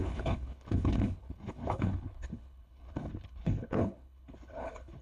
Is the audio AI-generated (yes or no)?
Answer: yes